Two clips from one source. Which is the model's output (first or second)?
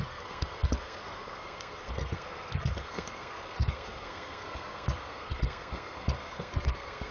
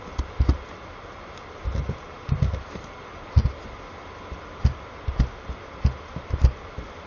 first